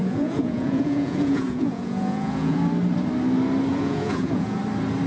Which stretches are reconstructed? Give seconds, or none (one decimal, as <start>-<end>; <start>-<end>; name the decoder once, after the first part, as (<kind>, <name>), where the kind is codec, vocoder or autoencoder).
0.0-2.6 (vocoder, Vocos); 3.7-4.6